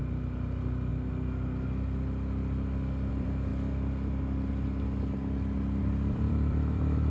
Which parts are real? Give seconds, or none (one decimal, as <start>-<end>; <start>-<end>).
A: 0.9-3.1; 3.5-5.8